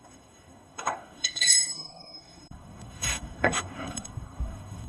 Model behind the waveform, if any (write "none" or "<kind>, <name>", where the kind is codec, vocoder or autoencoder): codec, SNAC